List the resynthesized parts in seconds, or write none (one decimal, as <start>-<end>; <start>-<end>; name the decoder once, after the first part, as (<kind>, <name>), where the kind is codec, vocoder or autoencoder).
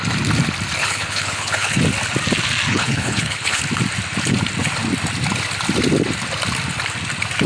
0.8-1.8 (codec, HILCodec); 2.7-3.6